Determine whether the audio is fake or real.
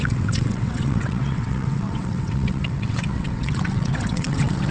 fake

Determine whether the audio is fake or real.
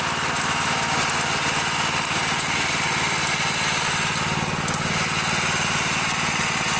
real